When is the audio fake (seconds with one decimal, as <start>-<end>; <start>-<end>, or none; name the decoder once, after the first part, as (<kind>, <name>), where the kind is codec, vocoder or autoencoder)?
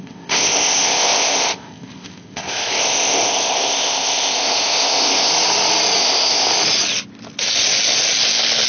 0.0-5.3 (codec, ZipCodec); 6.0-6.5